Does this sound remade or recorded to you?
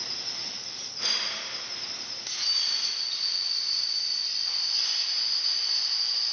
recorded